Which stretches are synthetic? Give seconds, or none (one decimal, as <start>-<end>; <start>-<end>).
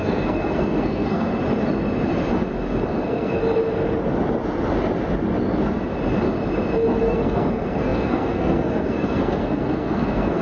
0.0-1.3; 3.0-3.4; 7.0-10.4